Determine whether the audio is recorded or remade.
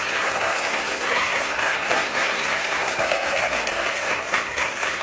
remade